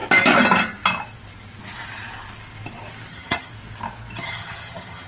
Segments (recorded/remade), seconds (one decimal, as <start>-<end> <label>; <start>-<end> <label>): 0.0-3.1 recorded; 3.1-3.5 remade; 3.5-4.2 recorded; 4.2-5.1 remade